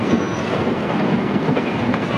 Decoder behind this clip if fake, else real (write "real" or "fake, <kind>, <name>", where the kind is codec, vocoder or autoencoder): fake, codec, SNAC